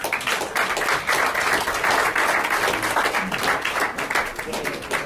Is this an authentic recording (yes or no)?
yes